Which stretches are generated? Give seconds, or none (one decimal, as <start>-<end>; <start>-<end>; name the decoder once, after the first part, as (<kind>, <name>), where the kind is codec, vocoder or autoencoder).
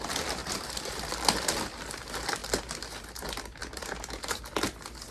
3.6-4.4 (vocoder, BigVGAN v2)